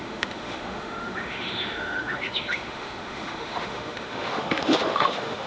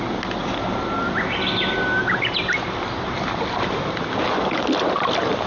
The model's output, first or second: first